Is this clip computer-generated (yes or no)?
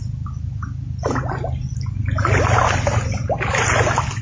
no